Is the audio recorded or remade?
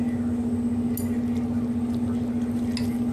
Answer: recorded